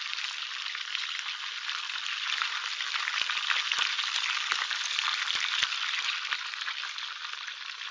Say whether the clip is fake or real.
real